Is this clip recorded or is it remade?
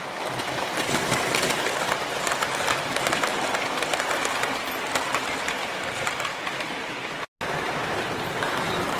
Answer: recorded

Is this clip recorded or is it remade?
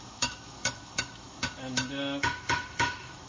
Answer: remade